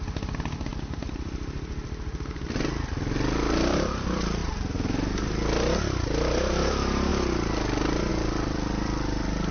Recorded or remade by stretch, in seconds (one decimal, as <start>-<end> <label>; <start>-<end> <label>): 0.0-4.4 remade; 4.4-6.5 recorded; 6.5-7.1 remade; 7.1-8.1 recorded; 8.1-9.5 remade